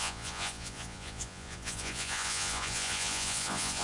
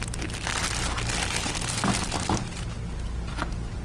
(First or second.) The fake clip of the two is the first